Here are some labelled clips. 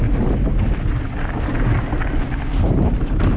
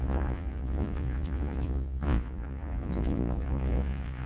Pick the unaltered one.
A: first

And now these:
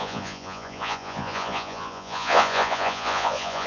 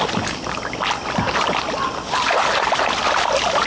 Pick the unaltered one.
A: second